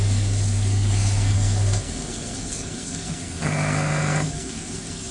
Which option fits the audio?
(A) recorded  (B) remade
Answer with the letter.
B